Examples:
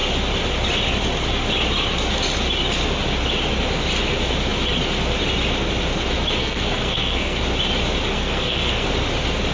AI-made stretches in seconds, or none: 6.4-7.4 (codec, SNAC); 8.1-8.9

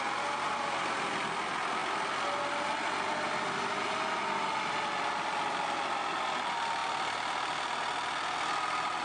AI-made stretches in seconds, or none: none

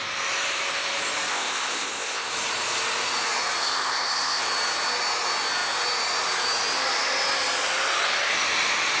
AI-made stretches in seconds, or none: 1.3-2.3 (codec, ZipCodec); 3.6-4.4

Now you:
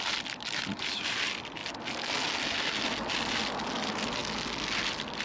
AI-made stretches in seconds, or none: 0.0-1.6 (vocoder, BigVGAN v2); 2.8-4.2; 4.8-5.2